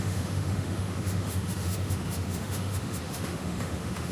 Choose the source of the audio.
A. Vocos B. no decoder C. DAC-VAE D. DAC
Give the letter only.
C